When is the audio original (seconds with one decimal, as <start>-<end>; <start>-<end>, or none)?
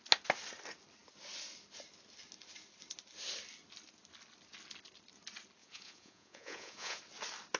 0.0-5.6; 7.0-7.6